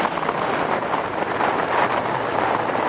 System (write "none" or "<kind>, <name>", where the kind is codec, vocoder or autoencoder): none